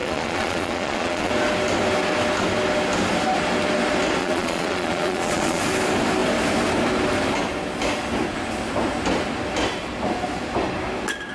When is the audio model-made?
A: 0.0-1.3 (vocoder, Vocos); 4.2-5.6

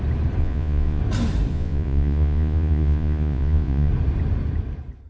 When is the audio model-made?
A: 0.4-1.0 (vocoder, Vocos); 1.5-3.9

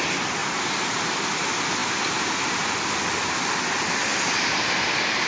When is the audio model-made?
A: 0.4-1.2 (vocoder, BigVGAN v2); 1.8-3.3

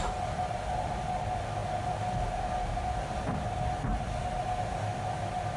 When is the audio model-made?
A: none

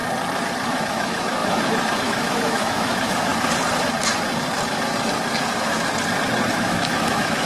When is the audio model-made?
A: 0.7-3.3 (autoencoder, DAC-VAE); 6.5-7.5